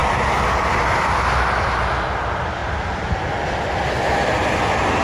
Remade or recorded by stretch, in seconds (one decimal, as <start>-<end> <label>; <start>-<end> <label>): 0.0-5.0 recorded